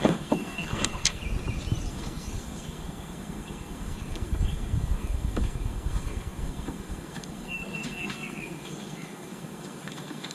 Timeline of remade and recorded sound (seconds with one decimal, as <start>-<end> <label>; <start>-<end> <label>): 0.0-1.2 remade; 1.2-1.9 recorded; 1.9-10.3 remade